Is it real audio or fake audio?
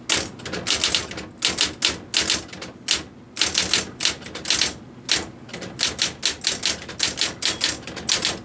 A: real